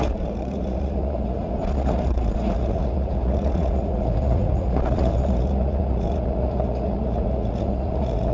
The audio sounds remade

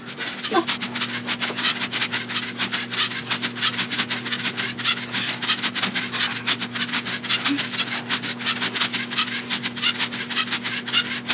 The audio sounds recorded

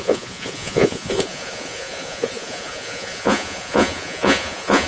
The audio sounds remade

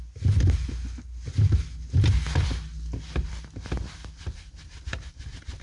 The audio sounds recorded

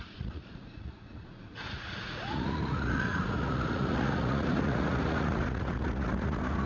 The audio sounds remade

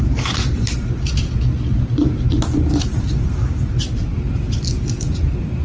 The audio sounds recorded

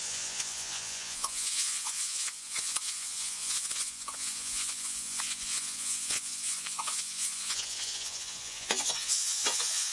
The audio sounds remade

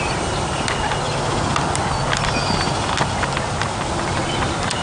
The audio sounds recorded